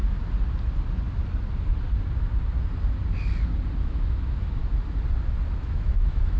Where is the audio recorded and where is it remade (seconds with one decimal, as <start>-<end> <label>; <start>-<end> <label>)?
0.0-3.8 recorded; 3.8-4.6 remade; 4.6-5.6 recorded; 5.6-6.4 remade